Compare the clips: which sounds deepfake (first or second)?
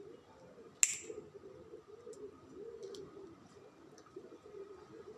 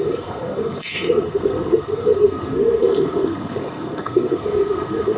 second